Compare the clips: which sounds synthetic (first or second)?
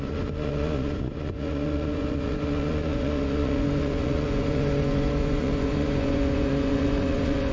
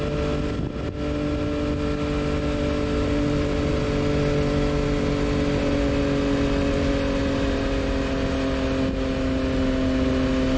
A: first